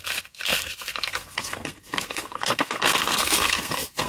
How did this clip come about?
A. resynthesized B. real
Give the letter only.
A